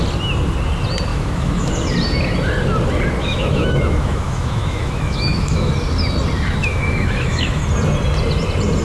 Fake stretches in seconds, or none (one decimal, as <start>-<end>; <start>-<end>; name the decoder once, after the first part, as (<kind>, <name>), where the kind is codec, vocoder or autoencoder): 1.1-1.7 (autoencoder, DAC-VAE); 3.2-5.7; 6.6-7.6